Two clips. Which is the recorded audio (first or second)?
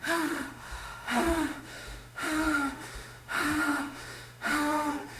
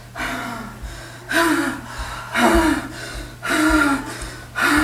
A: second